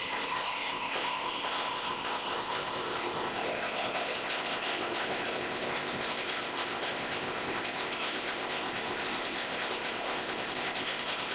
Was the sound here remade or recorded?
remade